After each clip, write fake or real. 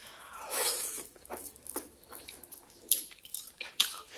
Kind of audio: fake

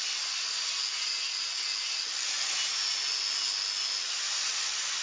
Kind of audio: real